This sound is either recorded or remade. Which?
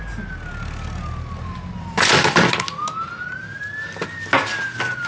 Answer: recorded